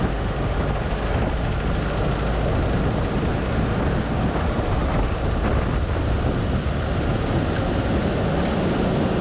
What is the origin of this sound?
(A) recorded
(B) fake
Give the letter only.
A